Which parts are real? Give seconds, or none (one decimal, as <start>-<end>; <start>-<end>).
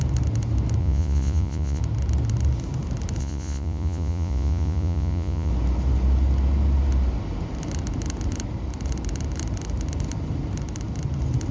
0.0-0.8; 1.8-3.2; 5.5-11.5